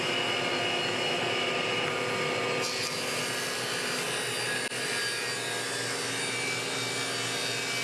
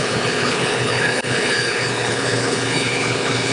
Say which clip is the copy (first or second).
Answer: second